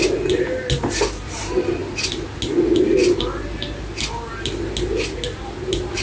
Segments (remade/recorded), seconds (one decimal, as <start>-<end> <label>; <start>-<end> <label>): 0.0-6.0 recorded